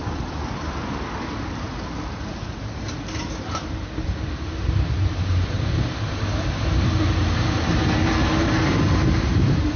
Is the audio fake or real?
fake